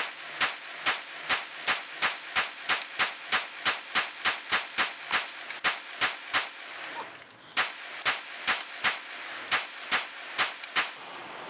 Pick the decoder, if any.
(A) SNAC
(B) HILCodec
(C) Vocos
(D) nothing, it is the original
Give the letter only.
D